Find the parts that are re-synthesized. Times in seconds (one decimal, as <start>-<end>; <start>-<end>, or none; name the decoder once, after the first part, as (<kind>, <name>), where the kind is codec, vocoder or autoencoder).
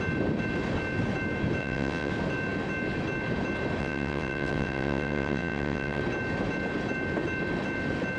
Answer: 1.6-2.1 (vocoder, WaveNeXt); 3.8-6.0